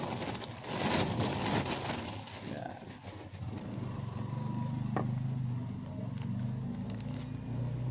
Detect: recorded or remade recorded